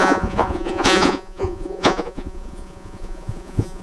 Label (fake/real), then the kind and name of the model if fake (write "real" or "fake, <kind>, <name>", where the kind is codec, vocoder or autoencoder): fake, vocoder, Vocos